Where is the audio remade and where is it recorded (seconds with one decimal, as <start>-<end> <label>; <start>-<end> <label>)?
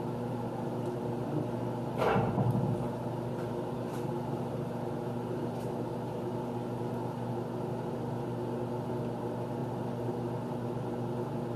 0.0-11.6 recorded